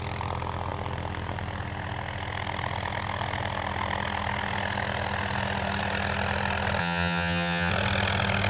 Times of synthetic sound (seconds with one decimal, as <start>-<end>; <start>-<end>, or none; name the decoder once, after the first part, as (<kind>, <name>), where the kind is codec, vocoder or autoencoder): 6.8-7.7 (vocoder, HiFi-GAN)